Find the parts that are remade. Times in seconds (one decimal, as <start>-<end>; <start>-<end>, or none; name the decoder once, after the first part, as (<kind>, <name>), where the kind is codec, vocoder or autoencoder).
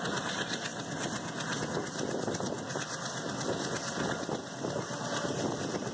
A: none